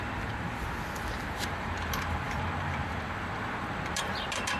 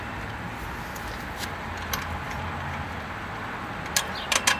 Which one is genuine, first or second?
second